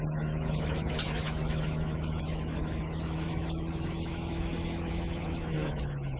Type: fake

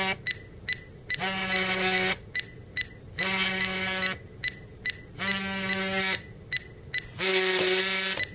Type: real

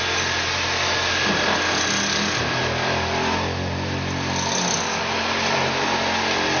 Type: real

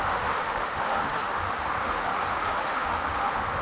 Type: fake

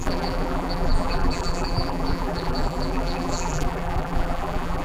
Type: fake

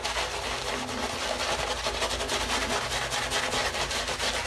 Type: real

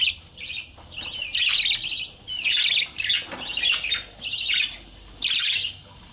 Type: fake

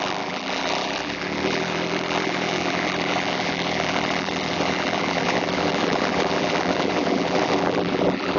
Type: fake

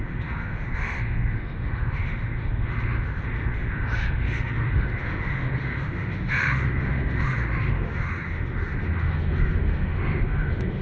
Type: fake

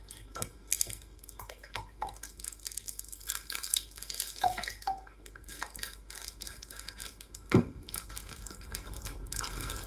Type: fake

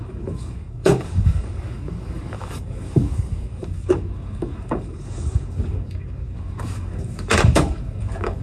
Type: fake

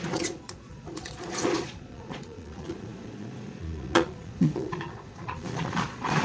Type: fake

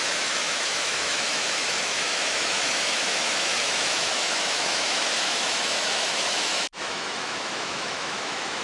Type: fake